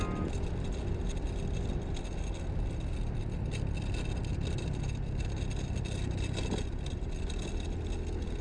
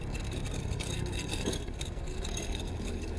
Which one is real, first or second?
first